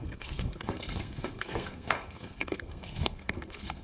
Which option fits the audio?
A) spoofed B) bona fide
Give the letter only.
A